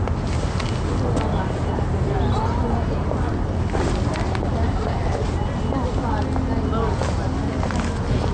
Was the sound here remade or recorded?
recorded